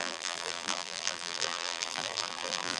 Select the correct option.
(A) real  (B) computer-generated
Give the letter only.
B